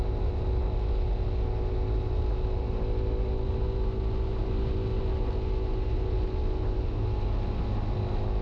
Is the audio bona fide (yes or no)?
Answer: yes